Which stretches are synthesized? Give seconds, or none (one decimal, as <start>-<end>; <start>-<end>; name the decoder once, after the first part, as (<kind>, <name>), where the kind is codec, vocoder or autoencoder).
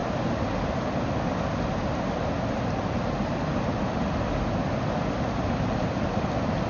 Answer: none